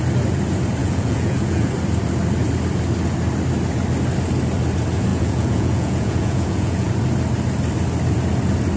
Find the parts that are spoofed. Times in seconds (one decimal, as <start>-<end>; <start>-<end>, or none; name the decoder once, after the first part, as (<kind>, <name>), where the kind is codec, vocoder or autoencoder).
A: 0.8-1.7 (vocoder, Vocos); 5.1-6.9